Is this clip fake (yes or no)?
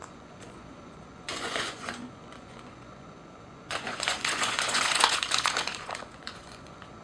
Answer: yes